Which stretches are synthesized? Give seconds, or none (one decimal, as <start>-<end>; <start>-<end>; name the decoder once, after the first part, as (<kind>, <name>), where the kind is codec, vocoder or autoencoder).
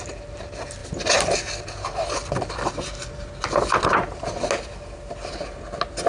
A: none